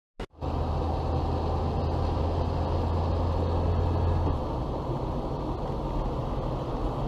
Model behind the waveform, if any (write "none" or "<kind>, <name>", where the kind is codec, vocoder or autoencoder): none